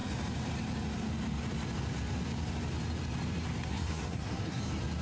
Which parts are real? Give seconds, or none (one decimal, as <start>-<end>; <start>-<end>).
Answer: 0.0-3.7; 4.6-5.0